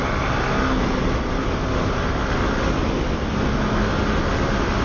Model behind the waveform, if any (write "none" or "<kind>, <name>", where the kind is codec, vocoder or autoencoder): none